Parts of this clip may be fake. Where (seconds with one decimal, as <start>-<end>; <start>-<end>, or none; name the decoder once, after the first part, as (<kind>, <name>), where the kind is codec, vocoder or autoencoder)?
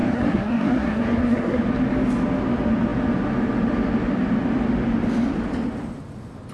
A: 0.0-1.6 (codec, SNAC)